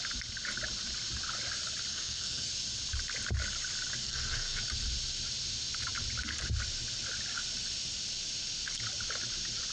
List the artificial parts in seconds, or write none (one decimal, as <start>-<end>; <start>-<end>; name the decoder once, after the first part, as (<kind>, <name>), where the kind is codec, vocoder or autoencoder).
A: 1.9-2.5 (codec, SNAC); 4.0-4.6